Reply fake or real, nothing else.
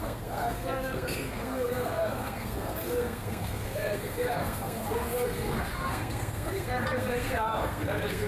fake